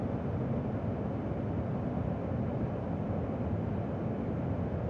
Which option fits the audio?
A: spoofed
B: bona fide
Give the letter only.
B